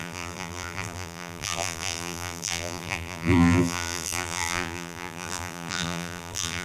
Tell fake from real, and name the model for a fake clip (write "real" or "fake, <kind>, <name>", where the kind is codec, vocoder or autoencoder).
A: fake, vocoder, BigVGAN v2